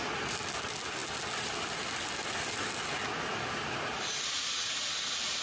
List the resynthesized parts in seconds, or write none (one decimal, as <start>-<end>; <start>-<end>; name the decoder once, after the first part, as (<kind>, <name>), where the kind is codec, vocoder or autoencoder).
none

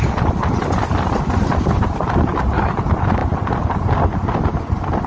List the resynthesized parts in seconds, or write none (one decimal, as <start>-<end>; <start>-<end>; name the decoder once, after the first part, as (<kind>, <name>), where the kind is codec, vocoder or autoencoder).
none

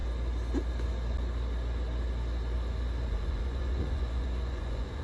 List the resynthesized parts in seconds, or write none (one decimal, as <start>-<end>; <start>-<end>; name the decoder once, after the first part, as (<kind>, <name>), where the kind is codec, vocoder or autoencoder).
3.0-5.0 (vocoder, Vocos)

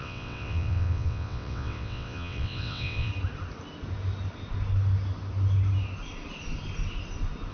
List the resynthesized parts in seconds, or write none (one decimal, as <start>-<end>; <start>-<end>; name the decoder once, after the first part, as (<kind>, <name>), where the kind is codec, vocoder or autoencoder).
0.0-3.1 (vocoder, WaveNeXt)